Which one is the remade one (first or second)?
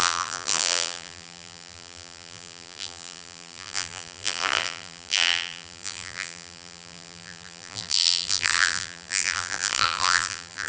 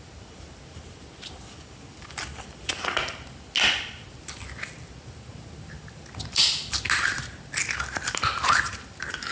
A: first